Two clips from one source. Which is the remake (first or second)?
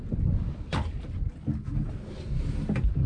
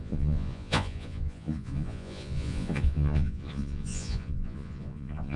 second